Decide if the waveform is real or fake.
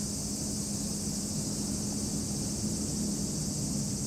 real